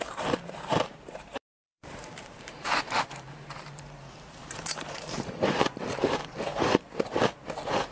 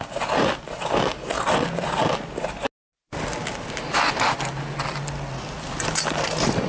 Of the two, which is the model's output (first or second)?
first